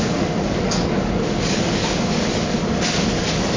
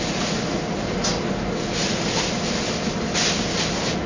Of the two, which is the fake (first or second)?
first